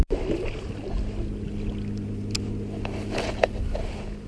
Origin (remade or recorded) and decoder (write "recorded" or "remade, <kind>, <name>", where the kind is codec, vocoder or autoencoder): recorded